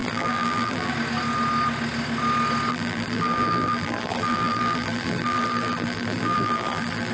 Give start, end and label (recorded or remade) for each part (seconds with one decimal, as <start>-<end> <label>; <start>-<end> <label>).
0.0-0.9 remade; 0.9-2.7 recorded; 2.7-7.1 remade